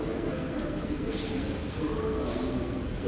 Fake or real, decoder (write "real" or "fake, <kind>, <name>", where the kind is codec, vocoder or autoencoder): fake, codec, SNAC